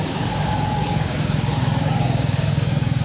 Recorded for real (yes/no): no